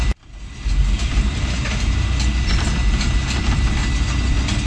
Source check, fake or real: real